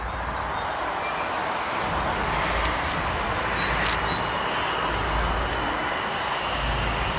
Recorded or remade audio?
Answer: recorded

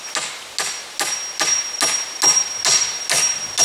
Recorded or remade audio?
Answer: recorded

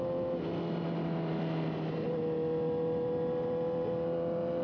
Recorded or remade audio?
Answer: recorded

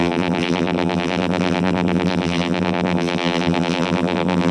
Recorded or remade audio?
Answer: remade